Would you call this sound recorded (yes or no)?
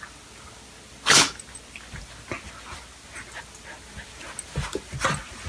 yes